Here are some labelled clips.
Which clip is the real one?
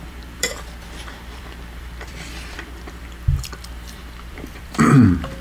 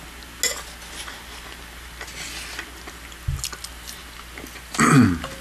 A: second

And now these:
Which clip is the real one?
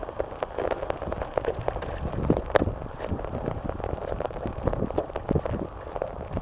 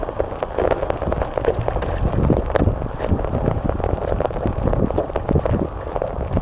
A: second